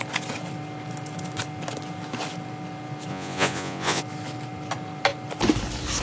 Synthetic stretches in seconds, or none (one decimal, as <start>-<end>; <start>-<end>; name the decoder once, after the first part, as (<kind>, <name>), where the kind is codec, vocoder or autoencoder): 3.1-4.0 (vocoder, Vocos)